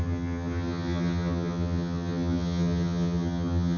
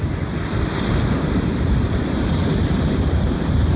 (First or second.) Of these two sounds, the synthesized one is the first